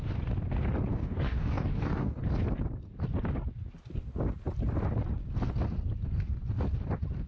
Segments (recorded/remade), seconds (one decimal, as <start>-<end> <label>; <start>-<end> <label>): 0.0-0.9 recorded; 0.9-2.2 remade; 2.2-7.3 recorded